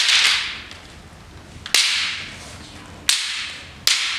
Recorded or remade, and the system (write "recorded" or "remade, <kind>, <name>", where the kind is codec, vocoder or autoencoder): recorded